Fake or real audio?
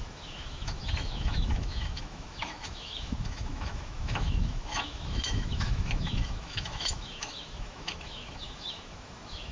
fake